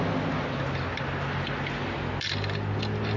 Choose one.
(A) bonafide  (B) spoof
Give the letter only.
A